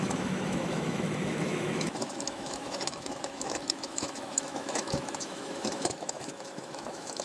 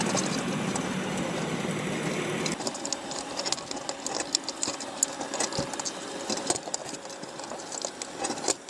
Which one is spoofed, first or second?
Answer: first